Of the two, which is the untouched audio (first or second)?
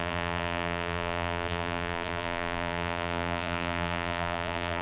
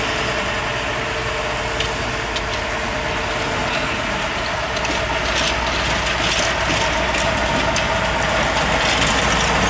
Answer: second